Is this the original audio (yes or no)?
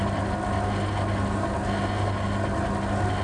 yes